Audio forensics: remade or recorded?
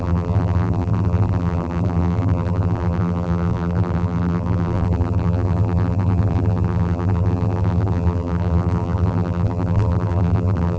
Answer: remade